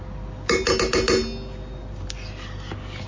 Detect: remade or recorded recorded